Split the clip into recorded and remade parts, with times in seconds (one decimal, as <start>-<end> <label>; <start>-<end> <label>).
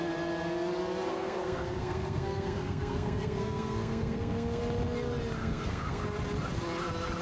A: 0.0-1.1 recorded; 1.1-4.6 remade; 4.6-5.4 recorded; 5.4-6.0 remade; 6.0-7.2 recorded